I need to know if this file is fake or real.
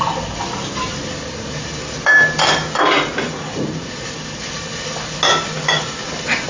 real